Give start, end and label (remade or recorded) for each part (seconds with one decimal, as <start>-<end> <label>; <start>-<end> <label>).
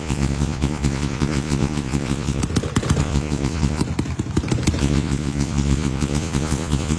0.0-2.4 remade; 2.4-3.0 recorded; 3.0-3.8 remade; 3.8-4.8 recorded; 4.8-7.0 remade